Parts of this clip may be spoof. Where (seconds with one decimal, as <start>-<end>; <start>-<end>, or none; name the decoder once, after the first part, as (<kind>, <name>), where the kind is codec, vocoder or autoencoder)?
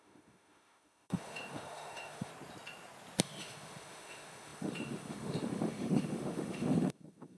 0.0-2.3 (autoencoder, DAC-VAE); 3.2-7.4